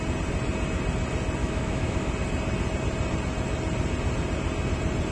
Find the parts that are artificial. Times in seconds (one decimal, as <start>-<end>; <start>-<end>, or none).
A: 1.4-2.1